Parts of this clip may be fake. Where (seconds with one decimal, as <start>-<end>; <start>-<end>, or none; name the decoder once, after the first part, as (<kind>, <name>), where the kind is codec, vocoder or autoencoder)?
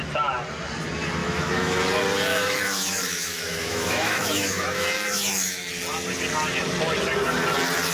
1.2-1.8 (autoencoder, DAC-VAE); 2.3-5.7